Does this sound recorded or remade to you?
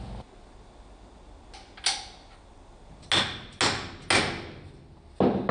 recorded